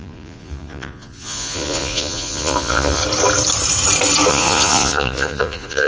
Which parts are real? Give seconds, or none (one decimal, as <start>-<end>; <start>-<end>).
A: 3.0-4.3